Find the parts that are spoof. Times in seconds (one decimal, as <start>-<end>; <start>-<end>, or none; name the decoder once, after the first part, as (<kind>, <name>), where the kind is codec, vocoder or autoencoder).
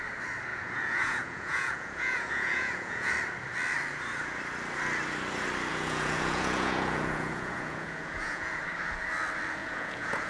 0.5-3.1 (vocoder, Vocos); 5.7-8.6; 9.6-10.3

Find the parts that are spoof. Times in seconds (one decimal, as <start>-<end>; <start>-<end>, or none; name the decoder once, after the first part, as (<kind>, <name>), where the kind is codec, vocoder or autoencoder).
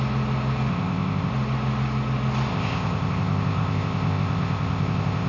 0.7-1.3 (codec, ZipCodec); 2.5-5.3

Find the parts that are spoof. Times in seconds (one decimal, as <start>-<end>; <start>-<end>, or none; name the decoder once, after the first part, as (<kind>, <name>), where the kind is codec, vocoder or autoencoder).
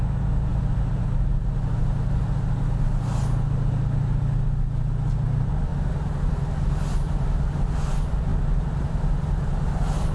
none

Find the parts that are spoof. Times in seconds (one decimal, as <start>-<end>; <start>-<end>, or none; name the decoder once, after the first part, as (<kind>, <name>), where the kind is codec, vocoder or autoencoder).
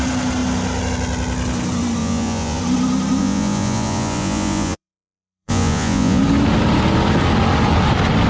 2.0-2.6 (vocoder, Vocos); 3.2-6.2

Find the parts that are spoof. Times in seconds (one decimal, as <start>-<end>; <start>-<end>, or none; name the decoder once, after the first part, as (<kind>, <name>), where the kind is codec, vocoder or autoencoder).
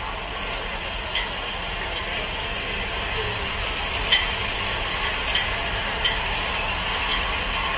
none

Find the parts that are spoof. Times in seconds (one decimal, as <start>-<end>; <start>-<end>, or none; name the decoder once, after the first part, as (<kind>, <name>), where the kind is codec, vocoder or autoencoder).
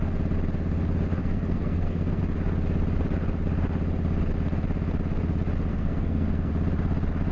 1.2-2.2 (codec, SNAC); 5.7-6.5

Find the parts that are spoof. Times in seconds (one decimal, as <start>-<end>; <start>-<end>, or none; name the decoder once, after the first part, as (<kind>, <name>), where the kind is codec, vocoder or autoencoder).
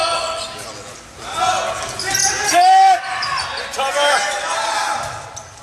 none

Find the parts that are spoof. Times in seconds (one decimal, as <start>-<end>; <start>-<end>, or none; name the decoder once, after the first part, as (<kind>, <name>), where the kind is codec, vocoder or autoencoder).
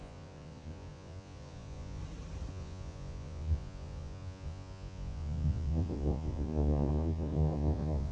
0.0-2.0 (vocoder, Vocos); 2.5-8.1